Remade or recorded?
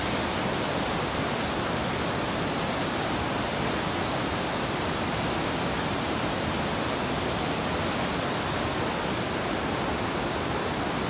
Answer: recorded